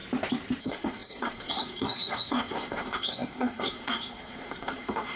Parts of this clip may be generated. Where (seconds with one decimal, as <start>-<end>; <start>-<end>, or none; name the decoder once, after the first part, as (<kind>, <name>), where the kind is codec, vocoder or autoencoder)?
0.6-5.2 (codec, SNAC)